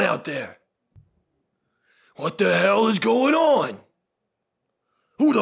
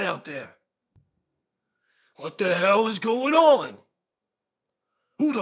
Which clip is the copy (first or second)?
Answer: second